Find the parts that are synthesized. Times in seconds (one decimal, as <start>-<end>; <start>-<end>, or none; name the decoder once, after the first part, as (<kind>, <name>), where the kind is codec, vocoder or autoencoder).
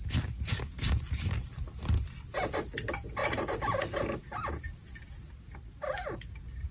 none